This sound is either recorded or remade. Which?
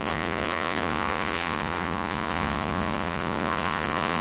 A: remade